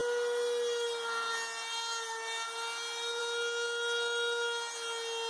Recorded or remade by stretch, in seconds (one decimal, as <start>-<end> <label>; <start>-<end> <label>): 0.0-5.3 recorded